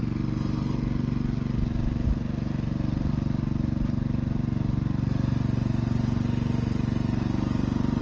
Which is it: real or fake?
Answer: real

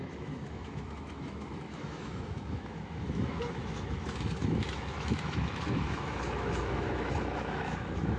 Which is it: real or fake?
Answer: fake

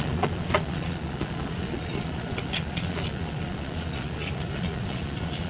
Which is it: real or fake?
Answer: fake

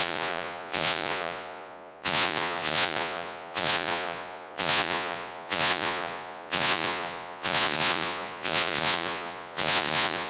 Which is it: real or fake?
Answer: fake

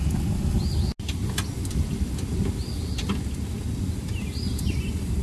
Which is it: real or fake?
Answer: real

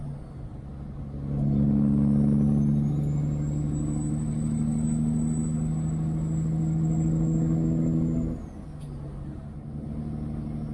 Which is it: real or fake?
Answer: real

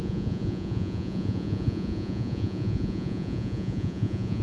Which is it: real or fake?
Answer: fake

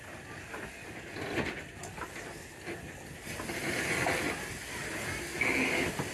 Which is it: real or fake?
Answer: real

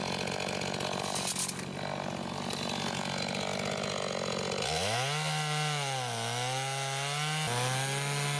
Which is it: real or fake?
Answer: real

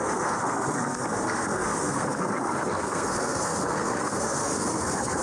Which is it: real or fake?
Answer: fake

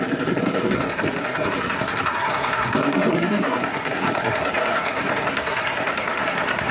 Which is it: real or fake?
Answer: fake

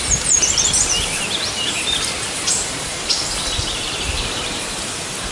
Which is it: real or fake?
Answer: fake